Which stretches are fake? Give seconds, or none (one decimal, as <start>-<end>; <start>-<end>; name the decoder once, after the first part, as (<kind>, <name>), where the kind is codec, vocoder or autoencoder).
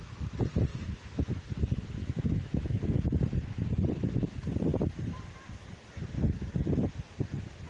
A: 0.7-1.3 (autoencoder, DAC-VAE); 2.0-2.9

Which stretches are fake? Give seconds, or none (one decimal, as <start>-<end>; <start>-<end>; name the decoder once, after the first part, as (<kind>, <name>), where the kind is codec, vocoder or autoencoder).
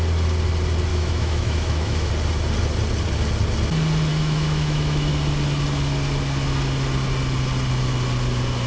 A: 0.9-2.1 (autoencoder, DAC-VAE); 4.1-5.1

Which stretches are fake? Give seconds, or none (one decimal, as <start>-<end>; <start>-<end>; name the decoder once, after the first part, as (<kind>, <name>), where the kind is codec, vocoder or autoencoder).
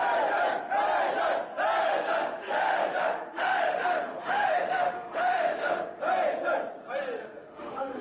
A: 1.8-6.0 (autoencoder, DAC-VAE); 7.2-8.0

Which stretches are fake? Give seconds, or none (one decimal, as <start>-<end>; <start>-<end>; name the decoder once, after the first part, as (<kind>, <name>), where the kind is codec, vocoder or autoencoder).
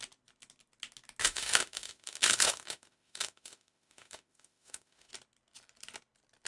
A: 1.2-5.1 (autoencoder, DAC-VAE)